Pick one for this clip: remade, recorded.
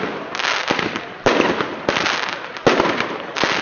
recorded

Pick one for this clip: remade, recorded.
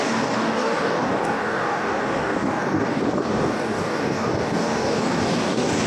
remade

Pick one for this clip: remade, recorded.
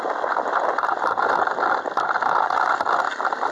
recorded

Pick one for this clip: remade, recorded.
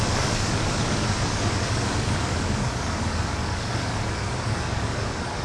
remade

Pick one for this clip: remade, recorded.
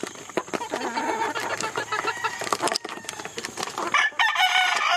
recorded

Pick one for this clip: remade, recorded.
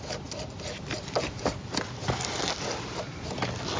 recorded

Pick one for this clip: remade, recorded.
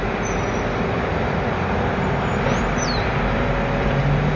recorded